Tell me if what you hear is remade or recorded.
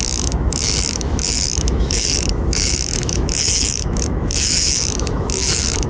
remade